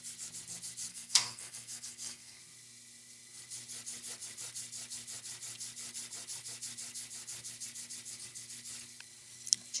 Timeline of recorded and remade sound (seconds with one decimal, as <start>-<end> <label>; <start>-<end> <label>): 0.0-0.9 recorded; 0.9-2.4 remade; 2.4-9.8 recorded